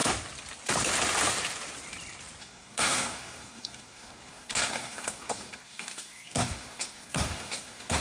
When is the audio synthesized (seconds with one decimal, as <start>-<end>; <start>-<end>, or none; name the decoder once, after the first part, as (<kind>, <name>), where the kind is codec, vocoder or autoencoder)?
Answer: 2.4-8.0 (codec, SNAC)